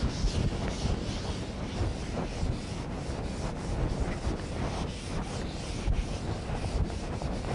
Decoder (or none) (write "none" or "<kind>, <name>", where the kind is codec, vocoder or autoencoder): none